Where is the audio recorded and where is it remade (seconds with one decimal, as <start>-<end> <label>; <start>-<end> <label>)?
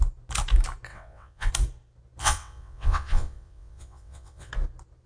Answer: 0.0-0.9 recorded; 0.9-1.5 remade; 1.5-2.2 recorded; 2.2-4.5 remade; 4.5-5.1 recorded